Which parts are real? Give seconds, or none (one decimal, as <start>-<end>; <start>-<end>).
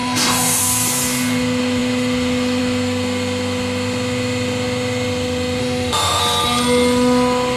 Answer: 0.6-5.6; 6.2-7.6